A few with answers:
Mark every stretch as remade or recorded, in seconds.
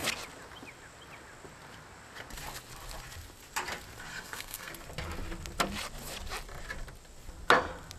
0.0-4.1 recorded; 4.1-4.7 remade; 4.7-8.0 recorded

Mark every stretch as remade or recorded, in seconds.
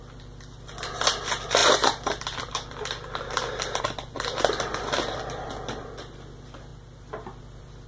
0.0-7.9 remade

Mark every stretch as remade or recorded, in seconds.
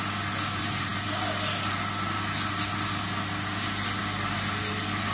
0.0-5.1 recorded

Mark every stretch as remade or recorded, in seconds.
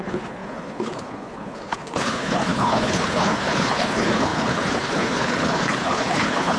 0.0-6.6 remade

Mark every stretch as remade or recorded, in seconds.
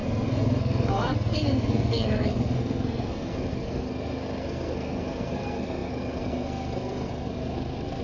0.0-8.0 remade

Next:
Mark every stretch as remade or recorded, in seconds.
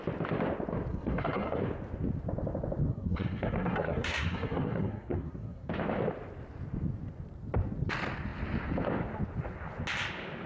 0.0-0.9 recorded; 0.9-1.6 remade; 1.6-2.9 recorded; 2.9-5.7 remade; 5.7-10.5 recorded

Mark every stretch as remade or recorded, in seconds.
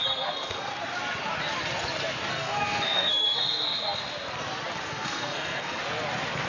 0.0-0.7 remade; 0.7-2.3 recorded; 2.3-4.0 remade; 4.0-4.9 recorded; 4.9-5.8 remade; 5.8-6.5 recorded